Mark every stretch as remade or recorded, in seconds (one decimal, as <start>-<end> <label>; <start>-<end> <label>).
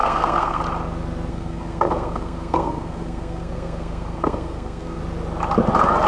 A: 0.0-0.6 remade; 0.6-1.3 recorded; 1.3-5.0 remade; 5.0-6.1 recorded